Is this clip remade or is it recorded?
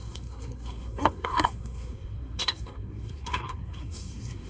remade